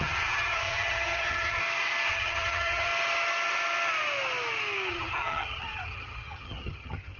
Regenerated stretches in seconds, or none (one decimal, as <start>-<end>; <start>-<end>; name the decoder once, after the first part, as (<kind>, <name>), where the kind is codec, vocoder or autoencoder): 0.0-1.6 (vocoder, HiFi-GAN); 2.1-2.9; 4.9-7.2